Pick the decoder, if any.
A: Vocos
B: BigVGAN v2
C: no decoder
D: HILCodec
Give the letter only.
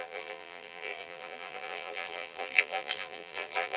B